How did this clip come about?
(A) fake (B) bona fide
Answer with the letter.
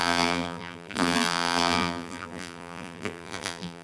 A